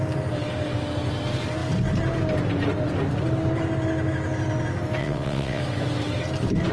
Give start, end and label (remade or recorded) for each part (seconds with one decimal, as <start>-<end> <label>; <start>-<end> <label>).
0.0-5.0 recorded; 5.0-5.6 remade; 5.6-6.7 recorded